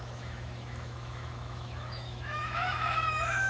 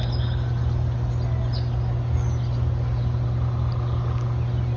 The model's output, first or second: first